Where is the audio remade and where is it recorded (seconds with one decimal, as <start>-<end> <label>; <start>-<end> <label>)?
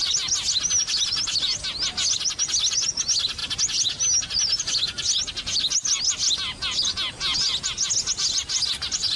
0.0-9.2 recorded